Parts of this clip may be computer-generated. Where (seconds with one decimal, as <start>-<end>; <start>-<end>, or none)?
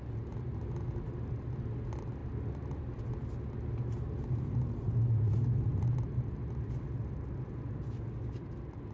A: none